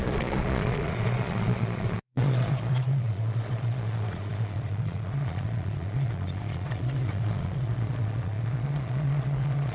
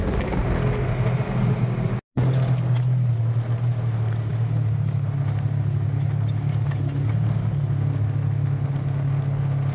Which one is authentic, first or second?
second